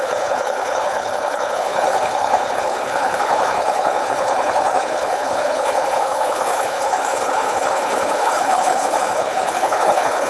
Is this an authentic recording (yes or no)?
no